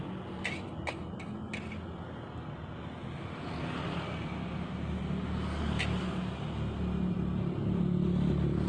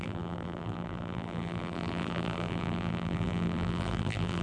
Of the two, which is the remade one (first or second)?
second